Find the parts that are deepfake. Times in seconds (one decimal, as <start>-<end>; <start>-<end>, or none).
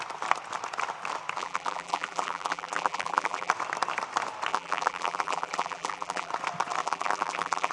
1.4-3.5; 4.5-6.3; 6.8-7.7